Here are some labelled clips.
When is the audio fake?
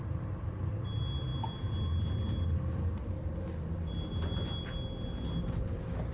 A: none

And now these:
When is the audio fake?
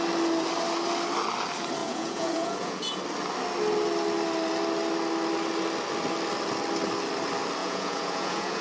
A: 1.8-3.0 (vocoder, Vocos); 7.6-8.6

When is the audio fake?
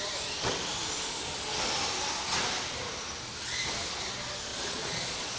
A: 4.5-5.4 (vocoder, Vocos)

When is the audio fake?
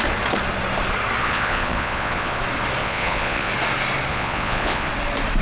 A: 1.2-2.4 (vocoder, Vocos); 2.8-3.5; 4.1-4.9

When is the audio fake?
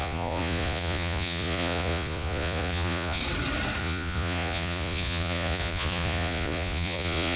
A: 0.0-3.2 (vocoder, Vocos); 3.8-7.4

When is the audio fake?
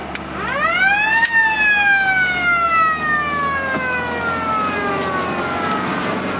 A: none